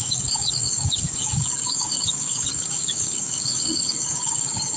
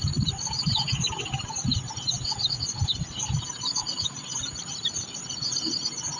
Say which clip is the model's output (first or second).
first